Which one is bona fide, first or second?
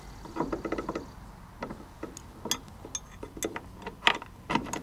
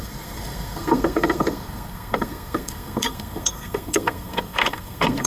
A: first